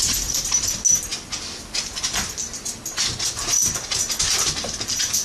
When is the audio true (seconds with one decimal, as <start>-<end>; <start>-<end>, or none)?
0.0-5.2

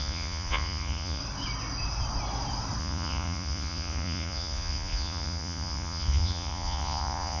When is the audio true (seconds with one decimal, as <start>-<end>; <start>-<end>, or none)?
1.2-2.8

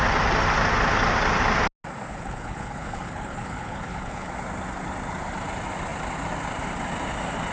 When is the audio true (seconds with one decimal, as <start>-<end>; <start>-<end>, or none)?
0.0-2.1; 4.3-7.5

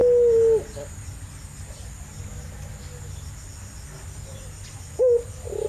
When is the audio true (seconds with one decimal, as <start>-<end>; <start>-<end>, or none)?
0.0-5.7

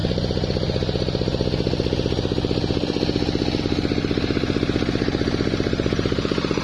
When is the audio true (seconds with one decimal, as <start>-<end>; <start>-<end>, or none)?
0.0-3.6

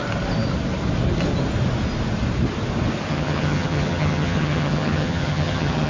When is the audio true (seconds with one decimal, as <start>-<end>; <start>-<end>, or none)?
0.0-3.1

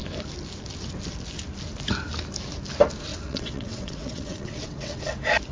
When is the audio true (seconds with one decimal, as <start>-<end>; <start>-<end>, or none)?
0.0-3.1; 5.0-5.5

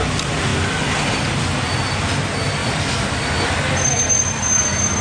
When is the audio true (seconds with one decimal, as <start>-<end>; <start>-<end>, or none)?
0.0-2.6; 4.5-5.0